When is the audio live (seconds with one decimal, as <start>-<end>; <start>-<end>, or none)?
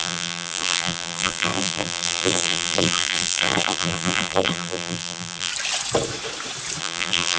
5.5-6.8